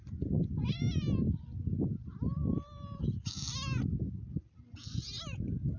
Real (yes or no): yes